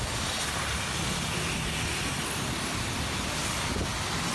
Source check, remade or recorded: recorded